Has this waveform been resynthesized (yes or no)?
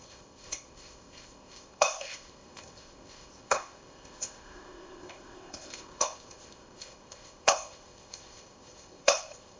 yes